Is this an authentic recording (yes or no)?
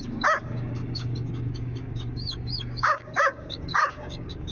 no